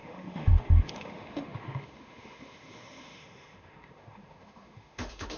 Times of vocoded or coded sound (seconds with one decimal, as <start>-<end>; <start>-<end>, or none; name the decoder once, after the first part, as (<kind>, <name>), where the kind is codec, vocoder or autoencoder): 0.0-5.4 (autoencoder, DAC-VAE)